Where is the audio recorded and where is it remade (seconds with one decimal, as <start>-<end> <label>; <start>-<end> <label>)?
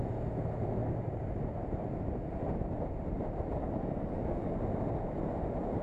0.0-3.6 recorded; 3.6-4.5 remade; 4.5-5.8 recorded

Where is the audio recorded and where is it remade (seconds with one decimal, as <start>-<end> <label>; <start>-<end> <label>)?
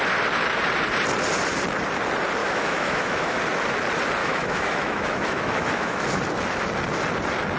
0.0-2.4 recorded; 2.4-3.4 remade; 3.4-4.2 recorded; 4.2-6.0 remade; 6.0-7.6 recorded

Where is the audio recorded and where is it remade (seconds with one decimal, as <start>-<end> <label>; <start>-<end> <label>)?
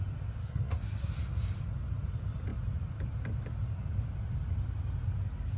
0.0-0.4 recorded; 0.4-1.1 remade; 1.1-5.6 recorded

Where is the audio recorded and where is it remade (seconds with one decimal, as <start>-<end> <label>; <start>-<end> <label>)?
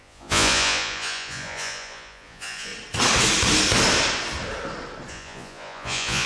0.0-2.7 remade; 2.7-5.1 recorded; 5.1-6.3 remade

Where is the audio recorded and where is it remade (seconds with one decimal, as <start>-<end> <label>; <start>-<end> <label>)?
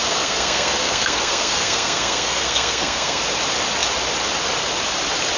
0.0-3.2 remade; 3.2-5.4 recorded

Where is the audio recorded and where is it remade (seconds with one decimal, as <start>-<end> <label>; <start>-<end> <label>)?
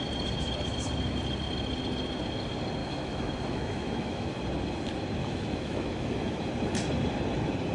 0.0-2.8 recorded; 2.8-4.4 remade; 4.4-5.2 recorded; 5.2-6.5 remade; 6.5-7.7 recorded